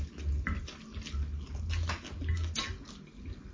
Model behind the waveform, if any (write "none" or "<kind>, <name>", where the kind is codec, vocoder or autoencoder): none